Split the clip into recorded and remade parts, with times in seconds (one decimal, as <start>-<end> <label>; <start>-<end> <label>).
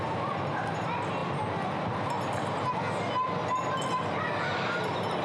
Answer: 0.0-5.2 recorded